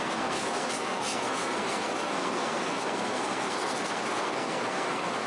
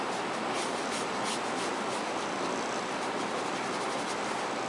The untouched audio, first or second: second